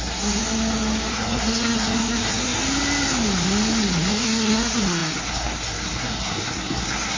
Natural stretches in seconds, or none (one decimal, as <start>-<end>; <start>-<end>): 0.4-1.1; 2.6-4.1

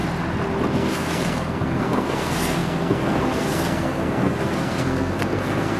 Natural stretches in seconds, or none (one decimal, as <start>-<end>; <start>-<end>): 0.0-0.7

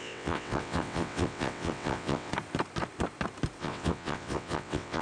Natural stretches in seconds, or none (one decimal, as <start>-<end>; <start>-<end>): 2.3-3.6

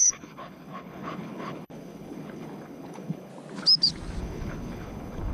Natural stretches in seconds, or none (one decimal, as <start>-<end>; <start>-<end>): 3.3-4.2

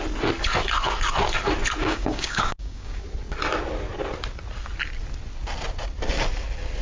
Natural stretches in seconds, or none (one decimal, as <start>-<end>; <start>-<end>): 0.0-1.8; 3.0-6.8

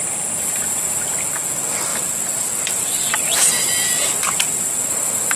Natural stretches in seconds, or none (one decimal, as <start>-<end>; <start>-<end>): 0.0-1.9; 4.4-5.4

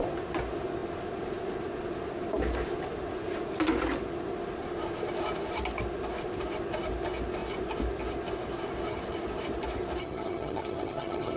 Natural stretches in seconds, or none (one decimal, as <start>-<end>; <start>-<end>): 0.0-10.0

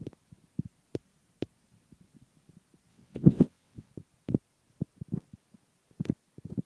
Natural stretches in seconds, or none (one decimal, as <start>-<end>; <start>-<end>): 0.0-2.9; 3.9-6.7